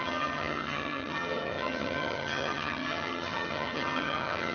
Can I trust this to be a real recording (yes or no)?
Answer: no